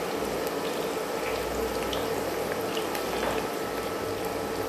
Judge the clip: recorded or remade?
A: recorded